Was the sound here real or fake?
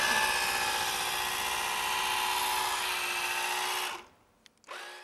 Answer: real